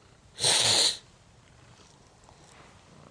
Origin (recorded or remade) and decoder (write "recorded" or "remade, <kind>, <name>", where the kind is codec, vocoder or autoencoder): recorded